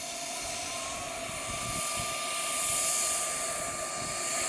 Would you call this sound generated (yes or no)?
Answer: no